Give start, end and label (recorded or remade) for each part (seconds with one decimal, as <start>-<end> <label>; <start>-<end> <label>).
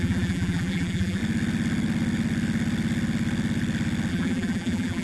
0.0-1.2 remade; 1.2-4.1 recorded; 4.1-5.0 remade